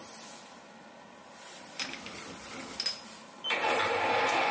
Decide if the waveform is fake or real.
real